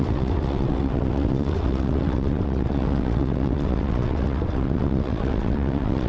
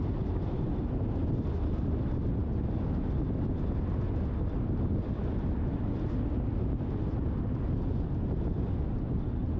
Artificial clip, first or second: first